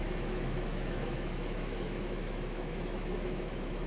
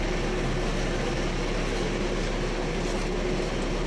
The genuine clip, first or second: second